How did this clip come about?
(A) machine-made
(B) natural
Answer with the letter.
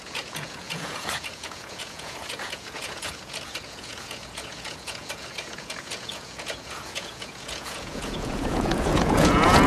A